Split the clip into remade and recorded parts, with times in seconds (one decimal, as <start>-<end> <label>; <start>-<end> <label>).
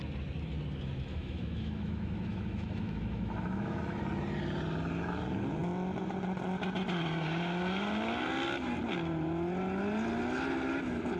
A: 0.0-1.1 recorded; 1.1-4.0 remade; 4.0-11.2 recorded